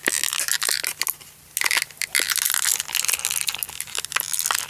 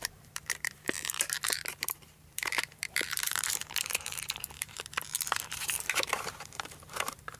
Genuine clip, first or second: first